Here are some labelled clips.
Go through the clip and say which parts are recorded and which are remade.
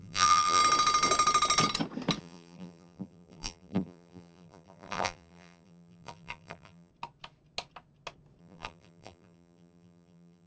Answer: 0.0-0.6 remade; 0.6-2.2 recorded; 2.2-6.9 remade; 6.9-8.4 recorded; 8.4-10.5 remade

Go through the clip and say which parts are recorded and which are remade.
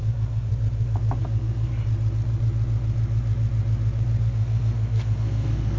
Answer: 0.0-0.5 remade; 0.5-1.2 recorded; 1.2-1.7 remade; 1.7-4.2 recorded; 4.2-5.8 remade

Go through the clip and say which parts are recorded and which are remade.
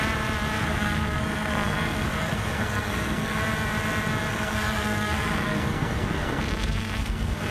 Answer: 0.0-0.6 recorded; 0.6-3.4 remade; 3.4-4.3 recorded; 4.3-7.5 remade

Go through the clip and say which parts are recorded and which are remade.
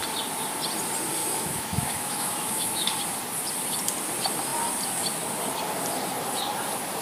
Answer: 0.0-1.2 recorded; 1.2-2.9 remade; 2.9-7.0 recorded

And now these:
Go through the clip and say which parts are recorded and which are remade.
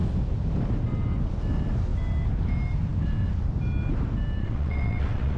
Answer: 0.0-4.4 recorded; 4.4-5.4 remade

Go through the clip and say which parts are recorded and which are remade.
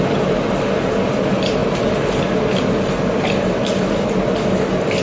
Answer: 0.0-5.0 recorded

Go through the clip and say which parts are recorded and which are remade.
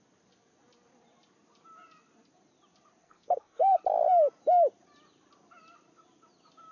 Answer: 0.0-3.0 recorded; 3.0-3.8 remade; 3.8-6.7 recorded